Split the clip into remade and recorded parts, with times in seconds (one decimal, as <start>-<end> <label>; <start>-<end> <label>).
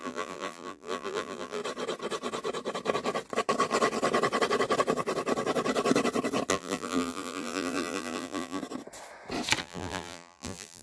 0.0-1.6 remade; 1.6-6.5 recorded; 6.5-8.6 remade; 8.6-9.6 recorded; 9.6-10.8 remade